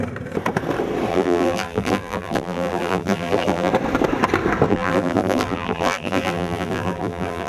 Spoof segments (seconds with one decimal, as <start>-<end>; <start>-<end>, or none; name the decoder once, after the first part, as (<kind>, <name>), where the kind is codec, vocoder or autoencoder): 1.1-3.7 (vocoder, BigVGAN v2); 4.7-7.5